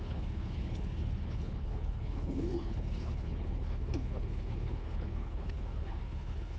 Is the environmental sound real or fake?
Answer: fake